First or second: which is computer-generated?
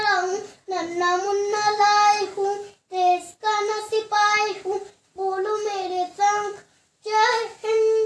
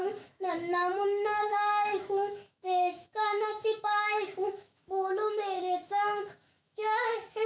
second